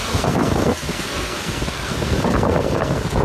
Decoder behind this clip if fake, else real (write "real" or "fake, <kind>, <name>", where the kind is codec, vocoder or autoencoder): fake, codec, SNAC